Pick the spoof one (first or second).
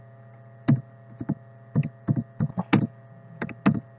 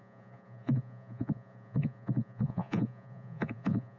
second